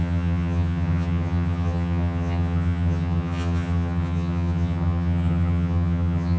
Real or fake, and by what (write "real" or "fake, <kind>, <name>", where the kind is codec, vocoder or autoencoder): fake, vocoder, HiFi-GAN